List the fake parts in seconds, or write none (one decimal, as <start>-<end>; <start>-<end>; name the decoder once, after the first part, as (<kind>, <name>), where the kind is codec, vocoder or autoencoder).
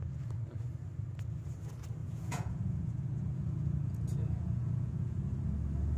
2.0-5.2 (vocoder, Vocos)